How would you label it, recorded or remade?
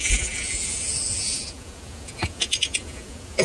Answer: remade